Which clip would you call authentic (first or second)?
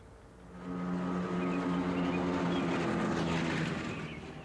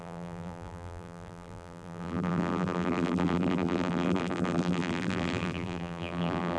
first